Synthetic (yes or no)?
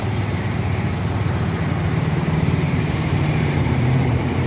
yes